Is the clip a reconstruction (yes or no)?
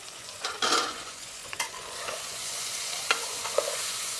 yes